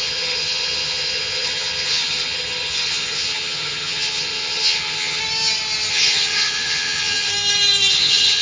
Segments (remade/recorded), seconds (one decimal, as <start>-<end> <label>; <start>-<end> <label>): 0.0-5.2 remade; 5.2-5.9 recorded; 5.9-7.3 remade; 7.3-7.9 recorded; 7.9-8.4 remade